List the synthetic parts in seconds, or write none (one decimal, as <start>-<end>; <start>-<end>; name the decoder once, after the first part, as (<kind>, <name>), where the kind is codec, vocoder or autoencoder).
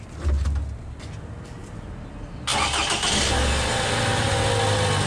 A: none